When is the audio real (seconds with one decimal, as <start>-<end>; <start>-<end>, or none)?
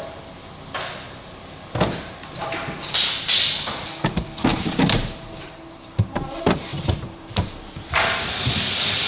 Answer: 0.0-4.5; 8.5-9.1